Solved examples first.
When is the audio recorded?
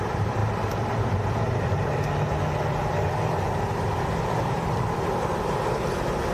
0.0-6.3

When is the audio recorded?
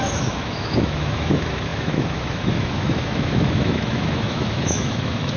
none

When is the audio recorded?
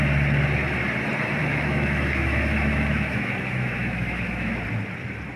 0.0-1.4; 4.6-5.4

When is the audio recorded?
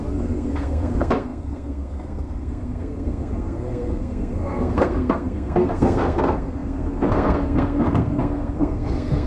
none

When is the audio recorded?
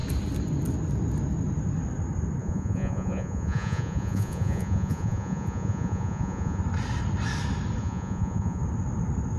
0.0-2.4; 6.6-7.8; 8.6-9.4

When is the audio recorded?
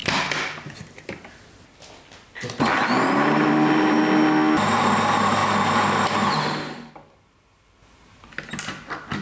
0.0-2.7; 4.0-9.2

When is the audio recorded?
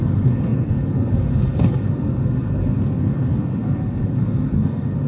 none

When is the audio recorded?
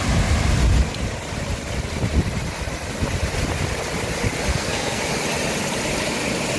0.0-4.5; 5.0-6.6